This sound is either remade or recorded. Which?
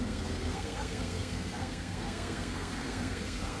remade